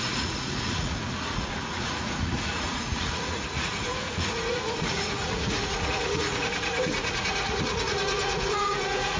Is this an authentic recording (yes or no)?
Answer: no